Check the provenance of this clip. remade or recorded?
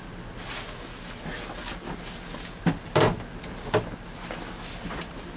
recorded